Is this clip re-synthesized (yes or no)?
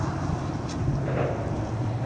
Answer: no